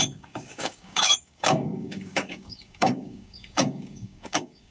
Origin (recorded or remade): remade